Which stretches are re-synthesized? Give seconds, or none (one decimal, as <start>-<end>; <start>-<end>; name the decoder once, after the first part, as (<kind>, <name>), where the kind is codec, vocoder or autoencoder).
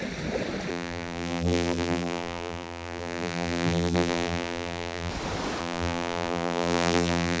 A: 0.7-5.1 (vocoder, BigVGAN v2); 5.6-7.4